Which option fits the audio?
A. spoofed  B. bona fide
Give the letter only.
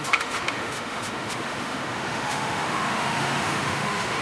A